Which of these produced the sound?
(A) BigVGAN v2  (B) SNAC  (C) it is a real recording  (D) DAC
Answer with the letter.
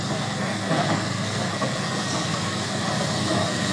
B